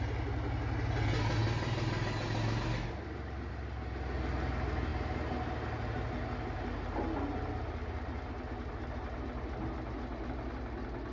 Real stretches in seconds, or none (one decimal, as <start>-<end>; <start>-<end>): 0.0-11.1